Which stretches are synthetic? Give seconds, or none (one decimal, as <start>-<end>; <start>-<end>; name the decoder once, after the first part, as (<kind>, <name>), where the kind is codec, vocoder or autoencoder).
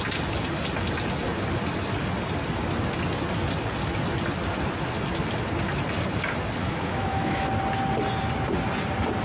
6.6-7.5 (autoencoder, DAC-VAE)